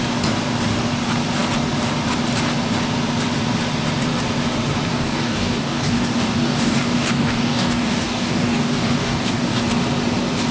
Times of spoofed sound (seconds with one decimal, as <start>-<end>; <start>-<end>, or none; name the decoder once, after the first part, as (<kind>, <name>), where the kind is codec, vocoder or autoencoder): 4.9-9.6 (codec, DAC)